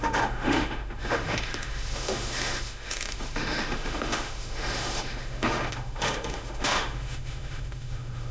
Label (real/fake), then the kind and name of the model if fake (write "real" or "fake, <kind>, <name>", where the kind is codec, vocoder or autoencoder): fake, autoencoder, DAC-VAE